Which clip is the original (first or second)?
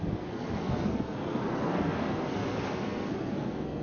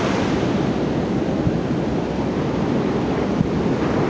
second